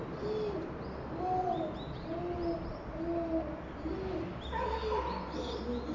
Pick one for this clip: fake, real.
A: real